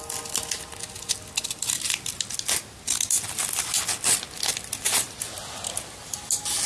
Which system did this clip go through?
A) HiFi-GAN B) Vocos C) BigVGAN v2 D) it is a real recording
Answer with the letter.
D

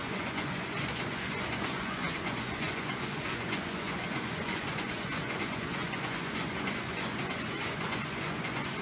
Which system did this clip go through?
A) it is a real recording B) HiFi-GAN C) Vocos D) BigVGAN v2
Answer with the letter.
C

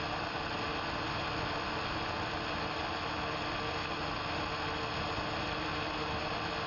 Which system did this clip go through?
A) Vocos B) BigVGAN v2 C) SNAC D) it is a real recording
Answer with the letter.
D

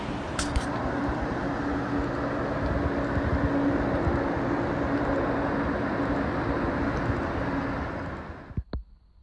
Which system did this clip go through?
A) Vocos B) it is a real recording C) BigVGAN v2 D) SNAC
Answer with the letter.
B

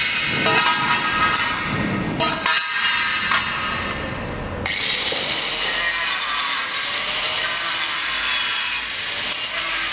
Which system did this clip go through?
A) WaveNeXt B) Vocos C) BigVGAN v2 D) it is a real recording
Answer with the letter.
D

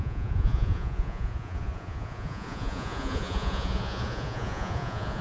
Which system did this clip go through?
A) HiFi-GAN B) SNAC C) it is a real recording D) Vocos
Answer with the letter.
D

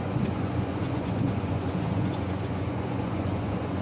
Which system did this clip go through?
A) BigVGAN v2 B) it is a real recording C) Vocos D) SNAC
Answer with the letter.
C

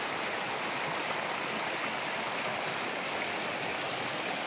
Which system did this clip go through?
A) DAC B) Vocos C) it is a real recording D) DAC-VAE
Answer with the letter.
C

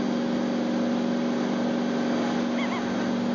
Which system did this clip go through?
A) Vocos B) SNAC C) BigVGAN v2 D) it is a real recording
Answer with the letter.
D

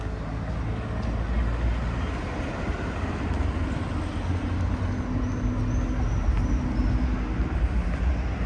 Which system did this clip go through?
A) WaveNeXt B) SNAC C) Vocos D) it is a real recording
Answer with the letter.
D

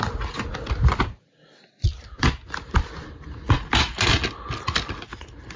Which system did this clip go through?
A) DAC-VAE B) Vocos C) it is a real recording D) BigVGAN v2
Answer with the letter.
C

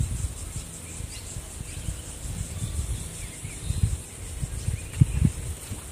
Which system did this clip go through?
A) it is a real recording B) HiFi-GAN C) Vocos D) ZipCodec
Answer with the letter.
A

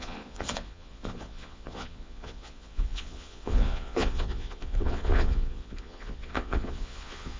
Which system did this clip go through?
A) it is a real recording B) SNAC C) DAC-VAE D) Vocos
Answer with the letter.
D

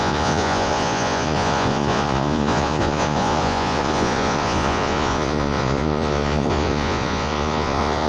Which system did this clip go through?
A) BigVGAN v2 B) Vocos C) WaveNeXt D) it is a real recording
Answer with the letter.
B